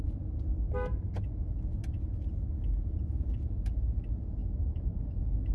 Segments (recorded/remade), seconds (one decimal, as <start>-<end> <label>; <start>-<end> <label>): 0.0-4.4 recorded; 4.4-5.5 remade